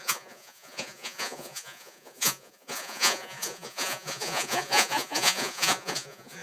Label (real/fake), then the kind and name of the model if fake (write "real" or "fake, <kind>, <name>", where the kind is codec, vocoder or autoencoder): fake, vocoder, Vocos